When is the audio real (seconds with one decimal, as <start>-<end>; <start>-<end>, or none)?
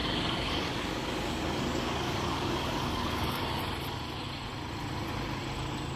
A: 3.6-6.0